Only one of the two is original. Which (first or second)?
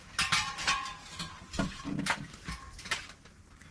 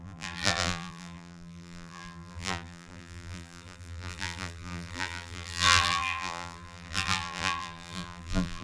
first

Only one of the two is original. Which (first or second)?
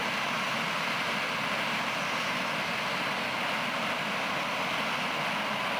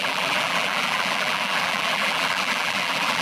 first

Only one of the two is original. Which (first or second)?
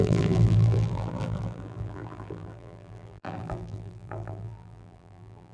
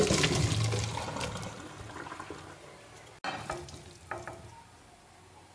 second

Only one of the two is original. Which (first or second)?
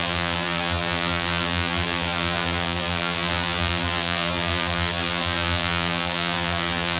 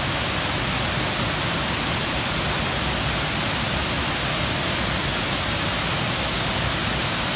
second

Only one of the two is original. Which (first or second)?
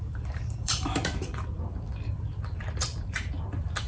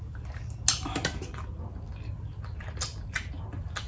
second